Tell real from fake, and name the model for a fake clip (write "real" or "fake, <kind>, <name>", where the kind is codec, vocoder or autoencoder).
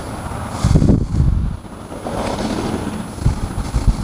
real